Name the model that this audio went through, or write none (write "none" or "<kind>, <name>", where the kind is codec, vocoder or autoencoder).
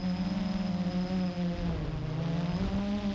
none